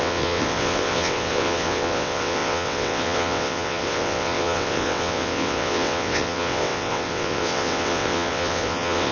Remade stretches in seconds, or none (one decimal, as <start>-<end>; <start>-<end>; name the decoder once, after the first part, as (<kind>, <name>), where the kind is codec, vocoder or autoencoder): 0.0-9.1 (vocoder, WaveNeXt)